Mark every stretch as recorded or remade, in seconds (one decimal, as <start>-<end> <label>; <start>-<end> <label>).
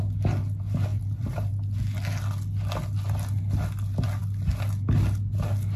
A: 0.0-0.9 recorded; 0.9-1.5 remade; 1.5-5.8 recorded